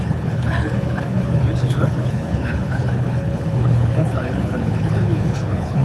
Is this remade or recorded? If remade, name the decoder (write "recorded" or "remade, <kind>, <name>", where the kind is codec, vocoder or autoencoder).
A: remade, codec, HILCodec